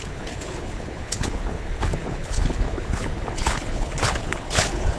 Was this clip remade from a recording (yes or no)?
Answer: yes